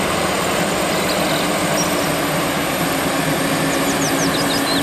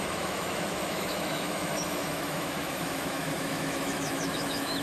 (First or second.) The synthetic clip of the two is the second